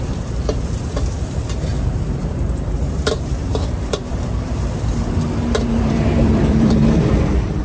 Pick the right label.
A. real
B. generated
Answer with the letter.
B